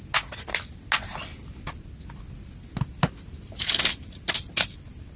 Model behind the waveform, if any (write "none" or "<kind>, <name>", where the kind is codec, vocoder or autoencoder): none